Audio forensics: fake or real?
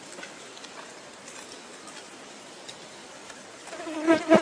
real